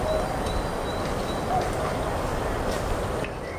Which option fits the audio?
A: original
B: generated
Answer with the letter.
A